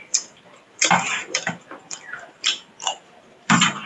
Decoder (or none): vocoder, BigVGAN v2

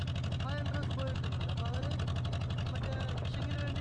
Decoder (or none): none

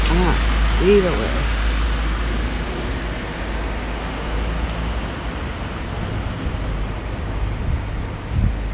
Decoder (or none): none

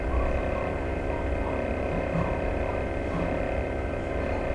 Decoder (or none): vocoder, BigVGAN v2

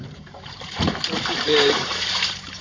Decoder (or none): vocoder, BigVGAN v2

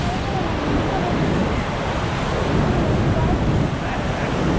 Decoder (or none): none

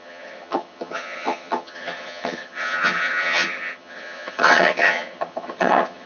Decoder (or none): vocoder, HiFi-GAN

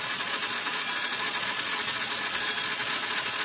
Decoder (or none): vocoder, Vocos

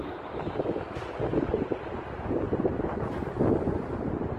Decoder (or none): none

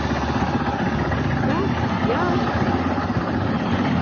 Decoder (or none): none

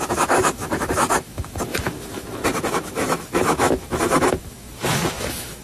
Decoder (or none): autoencoder, DAC-VAE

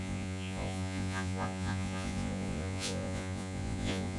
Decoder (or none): vocoder, Vocos